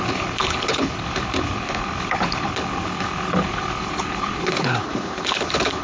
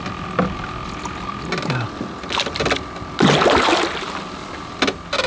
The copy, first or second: first